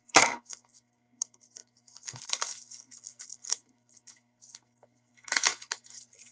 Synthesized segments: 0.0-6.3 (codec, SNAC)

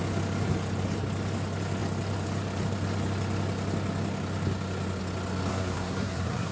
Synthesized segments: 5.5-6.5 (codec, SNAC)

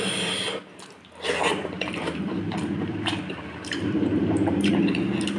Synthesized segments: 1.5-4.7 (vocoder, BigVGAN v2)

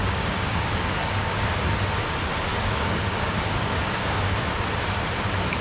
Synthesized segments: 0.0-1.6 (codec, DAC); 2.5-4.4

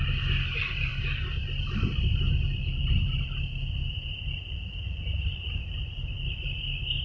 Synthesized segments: none

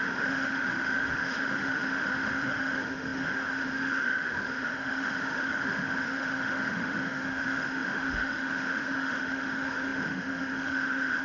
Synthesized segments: 0.0-11.2 (autoencoder, DAC-VAE)